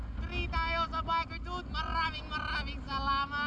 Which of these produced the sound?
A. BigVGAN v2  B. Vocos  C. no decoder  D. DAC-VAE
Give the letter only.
C